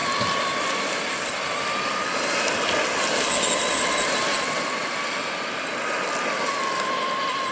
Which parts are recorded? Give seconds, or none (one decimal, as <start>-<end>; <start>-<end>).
0.0-7.5